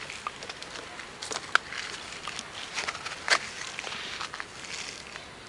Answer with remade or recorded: recorded